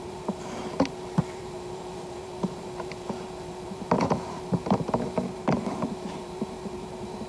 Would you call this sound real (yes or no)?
no